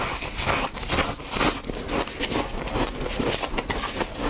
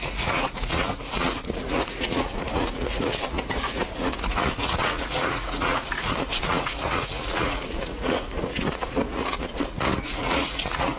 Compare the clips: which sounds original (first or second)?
first